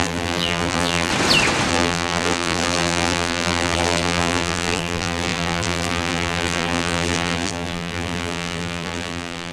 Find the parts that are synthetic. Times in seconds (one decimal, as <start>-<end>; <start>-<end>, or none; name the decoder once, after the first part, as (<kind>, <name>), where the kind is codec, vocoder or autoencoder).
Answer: 0.0-1.1 (vocoder, BigVGAN v2); 1.7-9.5

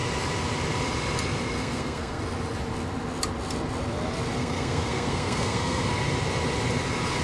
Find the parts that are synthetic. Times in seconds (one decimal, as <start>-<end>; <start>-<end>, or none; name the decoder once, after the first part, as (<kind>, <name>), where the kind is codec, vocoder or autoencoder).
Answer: 1.6-2.2 (codec, SNAC); 4.4-5.9

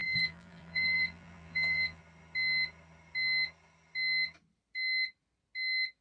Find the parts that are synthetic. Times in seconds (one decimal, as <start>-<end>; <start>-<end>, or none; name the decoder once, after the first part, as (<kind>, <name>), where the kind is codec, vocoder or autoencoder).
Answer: 0.0-2.0 (vocoder, BigVGAN v2)

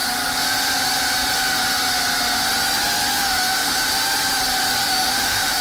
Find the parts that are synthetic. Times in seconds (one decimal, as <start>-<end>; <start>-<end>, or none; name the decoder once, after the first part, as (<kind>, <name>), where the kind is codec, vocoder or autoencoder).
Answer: 3.2-3.8 (autoencoder, DAC-VAE); 4.8-5.6